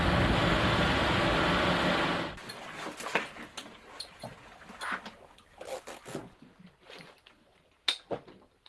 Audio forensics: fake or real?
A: real